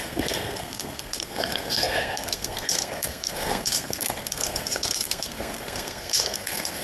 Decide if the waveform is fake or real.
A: fake